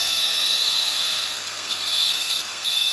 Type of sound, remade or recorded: remade